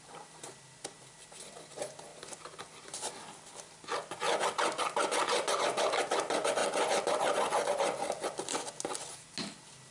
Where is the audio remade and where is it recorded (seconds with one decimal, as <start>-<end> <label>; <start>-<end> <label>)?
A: 0.0-9.9 recorded